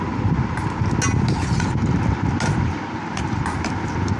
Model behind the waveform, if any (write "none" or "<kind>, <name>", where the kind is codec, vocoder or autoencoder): none